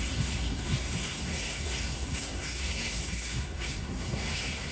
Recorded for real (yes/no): no